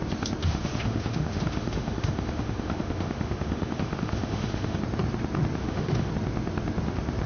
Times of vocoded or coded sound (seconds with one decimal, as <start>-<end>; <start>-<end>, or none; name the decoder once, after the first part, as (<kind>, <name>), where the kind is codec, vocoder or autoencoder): 0.4-4.8 (autoencoder, DAC-VAE); 5.6-6.1